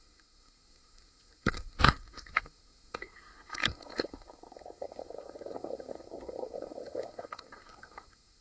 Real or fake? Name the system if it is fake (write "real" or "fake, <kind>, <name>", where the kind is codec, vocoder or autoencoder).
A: fake, codec, SNAC